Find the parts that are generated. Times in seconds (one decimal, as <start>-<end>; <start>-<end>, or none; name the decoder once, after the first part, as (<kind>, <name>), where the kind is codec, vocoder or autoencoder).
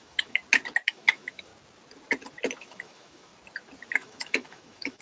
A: 0.0-0.4 (autoencoder, DAC-VAE); 0.9-1.5; 2.6-3.3; 3.9-5.0